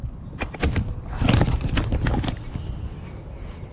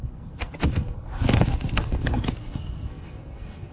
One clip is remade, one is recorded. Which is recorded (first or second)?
first